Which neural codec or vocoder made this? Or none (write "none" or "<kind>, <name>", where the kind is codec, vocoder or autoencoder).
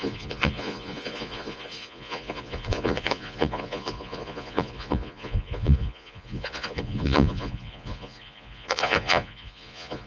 vocoder, Vocos